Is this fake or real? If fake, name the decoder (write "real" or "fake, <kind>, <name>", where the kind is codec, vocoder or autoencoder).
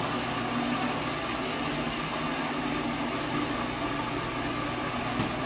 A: real